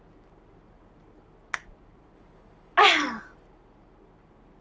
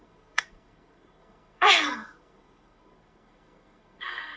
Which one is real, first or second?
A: first